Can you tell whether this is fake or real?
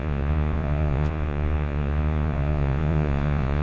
fake